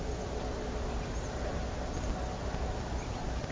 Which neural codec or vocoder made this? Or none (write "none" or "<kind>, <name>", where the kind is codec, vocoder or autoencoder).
none